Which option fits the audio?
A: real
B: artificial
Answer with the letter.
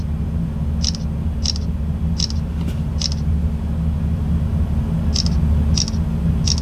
A